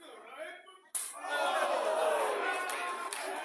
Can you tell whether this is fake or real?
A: real